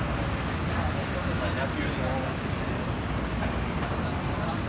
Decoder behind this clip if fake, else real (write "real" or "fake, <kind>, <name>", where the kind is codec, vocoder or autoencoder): real